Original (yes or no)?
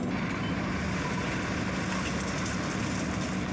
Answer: yes